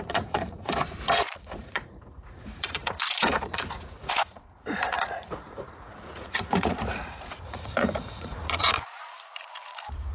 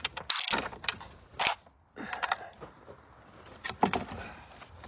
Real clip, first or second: second